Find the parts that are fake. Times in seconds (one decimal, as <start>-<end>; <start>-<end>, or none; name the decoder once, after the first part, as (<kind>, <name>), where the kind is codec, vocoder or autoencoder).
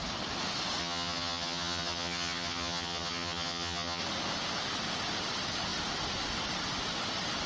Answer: 0.8-4.0 (vocoder, HiFi-GAN)